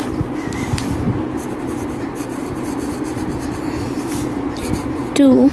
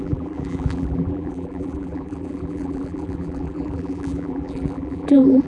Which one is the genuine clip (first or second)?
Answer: first